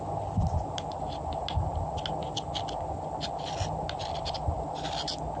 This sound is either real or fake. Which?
real